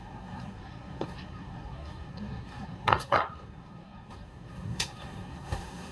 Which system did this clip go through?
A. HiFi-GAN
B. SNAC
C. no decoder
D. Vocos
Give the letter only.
B